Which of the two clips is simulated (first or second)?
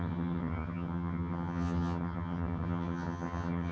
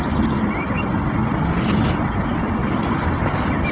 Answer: first